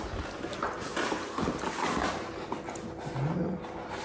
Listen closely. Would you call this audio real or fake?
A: real